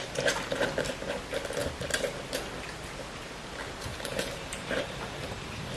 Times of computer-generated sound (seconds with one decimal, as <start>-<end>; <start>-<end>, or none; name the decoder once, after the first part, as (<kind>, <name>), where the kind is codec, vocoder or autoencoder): 3.9-5.8 (vocoder, BigVGAN v2)